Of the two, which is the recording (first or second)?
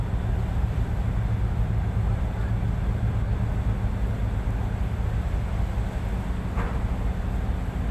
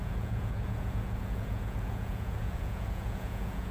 first